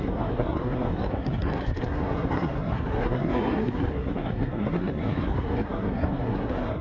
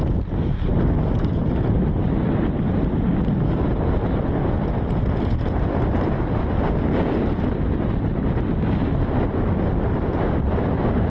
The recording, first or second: second